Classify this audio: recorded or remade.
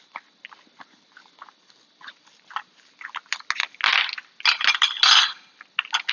recorded